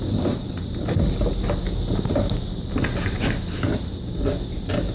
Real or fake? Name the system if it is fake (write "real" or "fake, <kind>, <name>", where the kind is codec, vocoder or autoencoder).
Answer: real